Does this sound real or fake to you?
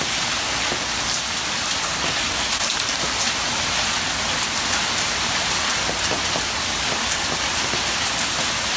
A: real